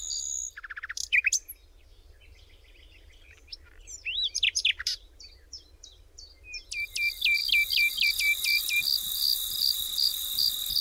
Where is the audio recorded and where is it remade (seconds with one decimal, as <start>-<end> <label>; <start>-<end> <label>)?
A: 0.0-4.6 recorded; 4.6-5.6 remade; 5.6-10.8 recorded